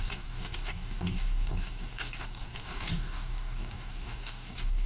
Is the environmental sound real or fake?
fake